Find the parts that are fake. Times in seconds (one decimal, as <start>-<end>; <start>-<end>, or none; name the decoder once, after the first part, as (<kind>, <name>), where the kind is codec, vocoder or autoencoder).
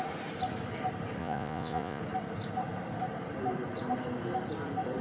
1.2-2.0 (vocoder, Vocos)